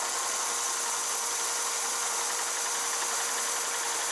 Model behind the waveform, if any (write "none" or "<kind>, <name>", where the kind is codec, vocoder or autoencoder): none